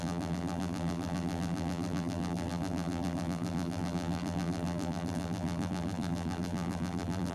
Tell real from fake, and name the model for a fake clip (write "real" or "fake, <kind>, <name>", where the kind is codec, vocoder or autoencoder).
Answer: fake, vocoder, BigVGAN v2